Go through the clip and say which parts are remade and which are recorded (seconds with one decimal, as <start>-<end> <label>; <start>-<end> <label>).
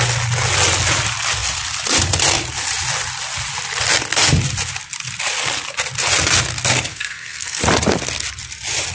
0.0-6.9 recorded; 6.9-7.6 remade; 7.6-8.9 recorded